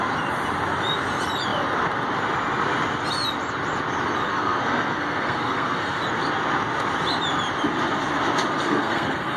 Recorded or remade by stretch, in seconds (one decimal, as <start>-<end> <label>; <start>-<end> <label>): 0.0-4.3 recorded; 4.3-6.0 remade; 6.0-8.6 recorded; 8.6-9.4 remade